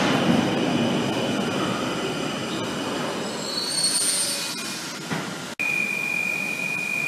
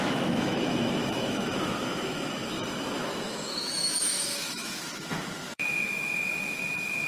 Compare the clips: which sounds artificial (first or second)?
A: second